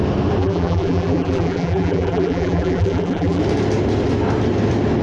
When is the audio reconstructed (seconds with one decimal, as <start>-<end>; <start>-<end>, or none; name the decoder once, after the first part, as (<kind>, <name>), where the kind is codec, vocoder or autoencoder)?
0.4-3.4 (vocoder, BigVGAN v2)